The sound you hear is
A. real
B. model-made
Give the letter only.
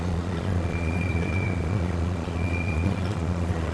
B